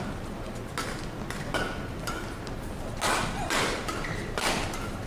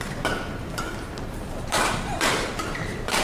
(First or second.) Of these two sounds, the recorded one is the first